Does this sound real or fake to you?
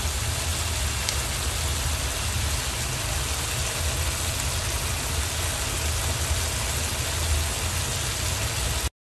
real